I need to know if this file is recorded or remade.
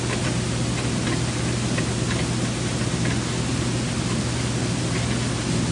recorded